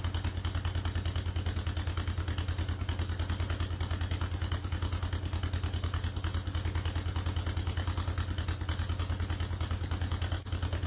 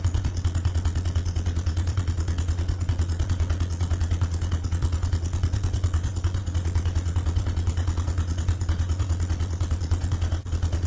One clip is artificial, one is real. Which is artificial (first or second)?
second